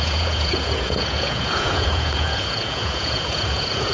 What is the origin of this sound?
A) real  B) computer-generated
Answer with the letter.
B